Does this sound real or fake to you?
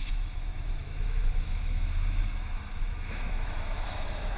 fake